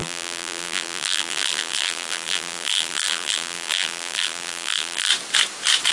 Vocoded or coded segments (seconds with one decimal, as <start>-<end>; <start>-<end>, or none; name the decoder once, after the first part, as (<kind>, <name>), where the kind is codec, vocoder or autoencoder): 0.0-5.1 (vocoder, BigVGAN v2)

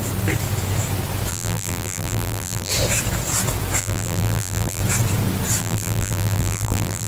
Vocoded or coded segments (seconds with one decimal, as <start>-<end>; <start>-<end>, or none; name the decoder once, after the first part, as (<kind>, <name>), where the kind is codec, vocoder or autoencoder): 1.3-2.7 (vocoder, BigVGAN v2); 3.8-4.8; 5.6-7.1

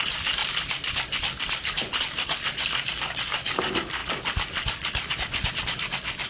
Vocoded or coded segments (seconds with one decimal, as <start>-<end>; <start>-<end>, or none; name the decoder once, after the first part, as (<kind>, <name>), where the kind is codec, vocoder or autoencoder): 0.4-2.0 (vocoder, BigVGAN v2); 4.0-5.1

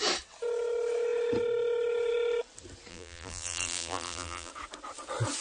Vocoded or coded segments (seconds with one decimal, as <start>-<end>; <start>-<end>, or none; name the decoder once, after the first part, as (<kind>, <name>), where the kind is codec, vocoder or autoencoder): 2.9-4.5 (vocoder, BigVGAN v2)

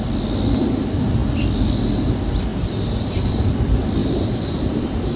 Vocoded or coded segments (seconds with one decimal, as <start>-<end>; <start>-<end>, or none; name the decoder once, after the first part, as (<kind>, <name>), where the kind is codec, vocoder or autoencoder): 2.5-3.5 (vocoder, BigVGAN v2); 4.0-5.2

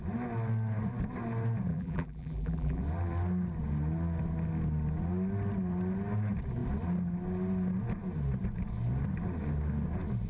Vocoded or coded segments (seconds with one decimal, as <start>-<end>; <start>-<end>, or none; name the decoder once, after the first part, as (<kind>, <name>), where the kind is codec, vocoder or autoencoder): 1.7-2.8 (vocoder, BigVGAN v2)

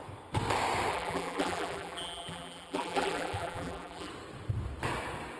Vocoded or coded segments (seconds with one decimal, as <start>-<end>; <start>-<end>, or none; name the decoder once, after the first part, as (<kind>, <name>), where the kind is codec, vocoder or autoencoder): 0.9-4.1 (vocoder, BigVGAN v2)